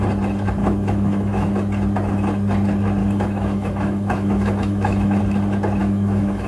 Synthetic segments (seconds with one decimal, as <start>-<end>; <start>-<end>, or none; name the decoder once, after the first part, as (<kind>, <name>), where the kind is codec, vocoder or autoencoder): 0.6-1.5 (autoencoder, DAC-VAE); 3.0-5.2; 5.8-6.5